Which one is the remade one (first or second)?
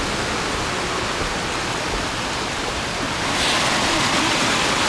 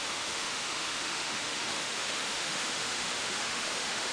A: second